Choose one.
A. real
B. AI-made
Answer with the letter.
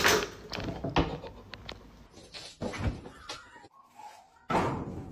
A